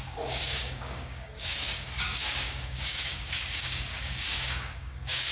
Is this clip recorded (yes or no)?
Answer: no